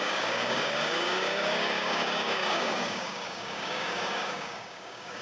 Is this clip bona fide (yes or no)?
no